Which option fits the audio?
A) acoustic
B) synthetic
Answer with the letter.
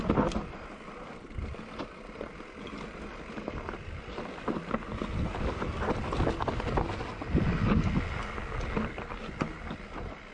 A